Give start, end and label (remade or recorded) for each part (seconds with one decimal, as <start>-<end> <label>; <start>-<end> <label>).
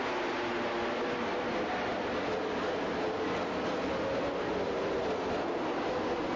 0.0-6.4 recorded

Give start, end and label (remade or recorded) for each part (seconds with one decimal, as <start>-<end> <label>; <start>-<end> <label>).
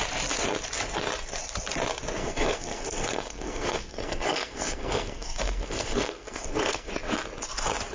0.0-2.2 recorded; 2.2-6.9 remade; 6.9-7.9 recorded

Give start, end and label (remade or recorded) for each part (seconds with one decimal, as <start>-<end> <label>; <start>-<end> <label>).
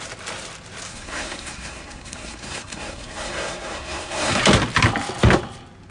0.0-0.9 recorded; 0.9-4.4 remade; 4.4-5.9 recorded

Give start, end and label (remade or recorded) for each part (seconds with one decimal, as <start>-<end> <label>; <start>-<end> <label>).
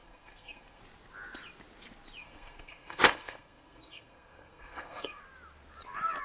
0.0-0.8 remade; 0.8-2.2 recorded; 2.2-5.2 remade; 5.2-6.2 recorded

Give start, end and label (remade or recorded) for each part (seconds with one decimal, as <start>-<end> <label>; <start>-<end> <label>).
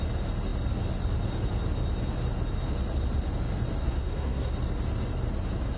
0.0-3.8 recorded; 3.8-4.5 remade; 4.5-5.8 recorded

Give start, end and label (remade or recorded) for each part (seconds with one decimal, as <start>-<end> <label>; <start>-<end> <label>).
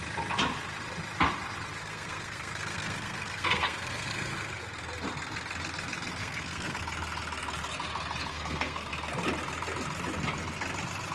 0.0-1.8 recorded; 1.8-4.6 remade; 4.6-6.2 recorded; 6.2-6.8 remade; 6.8-8.3 recorded; 8.3-8.9 remade; 8.9-11.1 recorded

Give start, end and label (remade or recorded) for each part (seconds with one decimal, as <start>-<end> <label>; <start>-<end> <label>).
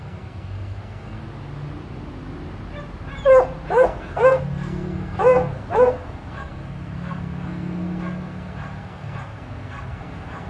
0.0-1.2 remade; 1.2-3.7 recorded; 3.7-10.5 remade